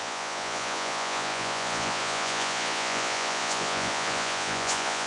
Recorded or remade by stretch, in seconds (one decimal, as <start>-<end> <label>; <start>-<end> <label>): 0.0-5.1 remade